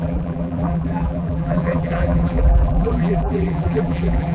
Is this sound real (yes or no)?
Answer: no